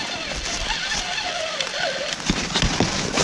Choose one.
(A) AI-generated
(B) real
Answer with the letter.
B